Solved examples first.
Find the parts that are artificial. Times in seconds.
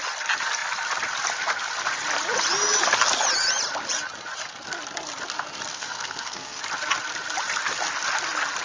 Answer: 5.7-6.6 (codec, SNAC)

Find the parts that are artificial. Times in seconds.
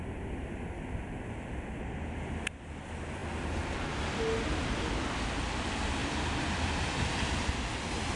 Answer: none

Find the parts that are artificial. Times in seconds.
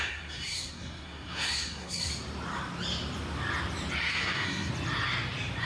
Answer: 0.0-2.1 (codec, SNAC); 4.1-4.7